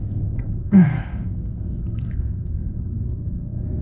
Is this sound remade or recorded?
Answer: remade